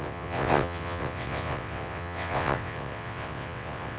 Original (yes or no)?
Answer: no